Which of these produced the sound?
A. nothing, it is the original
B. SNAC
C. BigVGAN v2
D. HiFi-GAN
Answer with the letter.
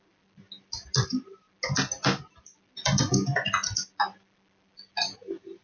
A